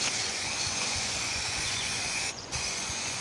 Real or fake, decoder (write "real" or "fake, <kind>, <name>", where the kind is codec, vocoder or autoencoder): fake, vocoder, Vocos